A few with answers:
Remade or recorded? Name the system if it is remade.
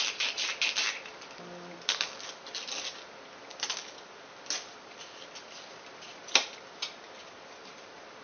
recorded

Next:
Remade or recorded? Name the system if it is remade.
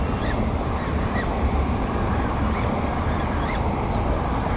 recorded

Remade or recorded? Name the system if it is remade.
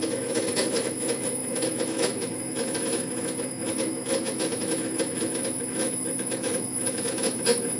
remade, autoencoder, DAC-VAE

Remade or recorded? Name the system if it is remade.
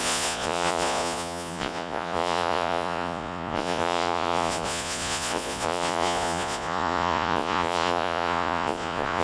remade, vocoder, Vocos